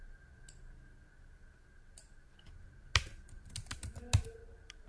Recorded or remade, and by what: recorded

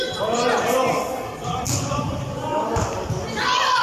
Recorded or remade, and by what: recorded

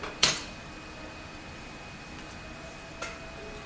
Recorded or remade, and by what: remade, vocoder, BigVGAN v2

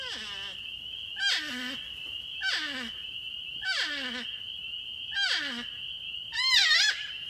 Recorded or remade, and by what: recorded